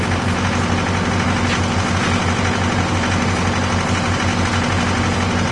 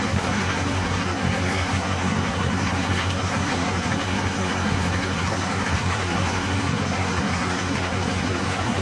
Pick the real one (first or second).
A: first